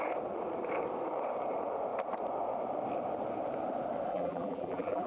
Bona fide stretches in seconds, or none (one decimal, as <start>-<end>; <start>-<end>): 0.0-4.1

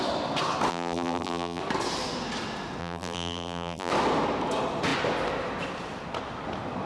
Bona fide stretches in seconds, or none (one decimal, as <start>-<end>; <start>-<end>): 0.0-0.7; 1.6-2.8; 3.9-6.9

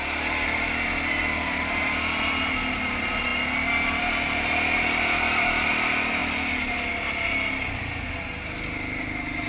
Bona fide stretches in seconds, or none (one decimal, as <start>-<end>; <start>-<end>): 0.0-9.5